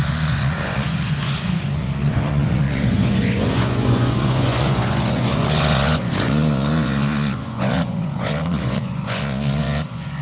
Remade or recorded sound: remade